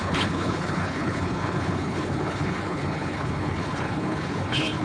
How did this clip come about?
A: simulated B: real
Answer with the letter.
A